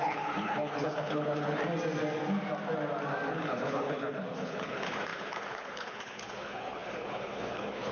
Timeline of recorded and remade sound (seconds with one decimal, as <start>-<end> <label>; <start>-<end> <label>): 0.0-1.6 remade; 1.6-3.3 recorded; 3.3-7.9 remade